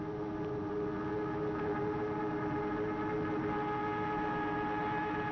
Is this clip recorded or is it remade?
recorded